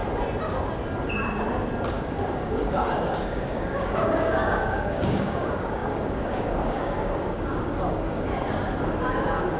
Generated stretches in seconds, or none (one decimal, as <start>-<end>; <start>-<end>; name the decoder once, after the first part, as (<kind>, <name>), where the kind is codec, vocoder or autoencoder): 1.9-8.3 (codec, DAC); 9.0-9.6